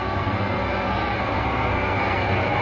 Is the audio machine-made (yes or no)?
yes